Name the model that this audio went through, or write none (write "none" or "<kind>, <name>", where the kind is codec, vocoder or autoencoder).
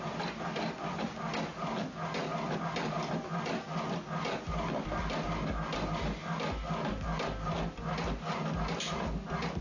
none